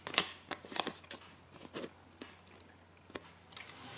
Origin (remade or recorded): recorded